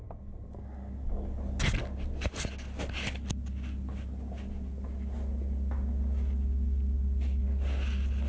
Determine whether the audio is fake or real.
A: real